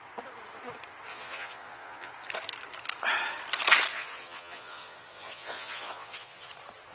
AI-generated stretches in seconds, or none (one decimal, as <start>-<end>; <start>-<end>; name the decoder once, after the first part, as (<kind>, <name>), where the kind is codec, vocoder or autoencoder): 1.1-2.1 (vocoder, Vocos); 3.9-6.5